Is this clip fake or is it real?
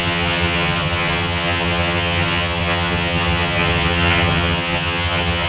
fake